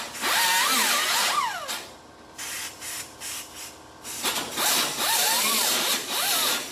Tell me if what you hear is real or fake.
real